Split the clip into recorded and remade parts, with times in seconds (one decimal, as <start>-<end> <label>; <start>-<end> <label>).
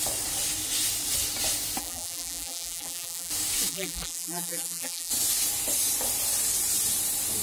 0.0-1.8 recorded; 1.8-3.3 remade; 3.3-3.7 recorded; 3.7-5.1 remade; 5.1-7.4 recorded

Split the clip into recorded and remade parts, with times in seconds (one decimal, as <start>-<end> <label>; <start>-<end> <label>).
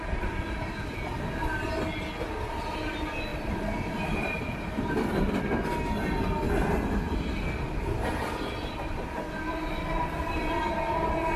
0.0-3.3 recorded; 3.3-5.4 remade; 5.4-11.4 recorded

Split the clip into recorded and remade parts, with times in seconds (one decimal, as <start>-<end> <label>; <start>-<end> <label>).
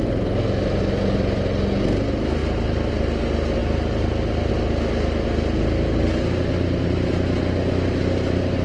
0.0-8.6 recorded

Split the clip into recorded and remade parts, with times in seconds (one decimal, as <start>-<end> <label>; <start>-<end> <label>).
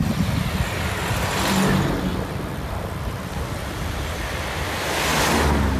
0.0-2.1 recorded; 2.1-4.3 remade; 4.3-5.8 recorded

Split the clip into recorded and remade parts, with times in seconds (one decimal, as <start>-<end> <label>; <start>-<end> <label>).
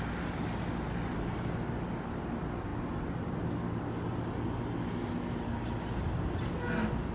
0.0-7.1 recorded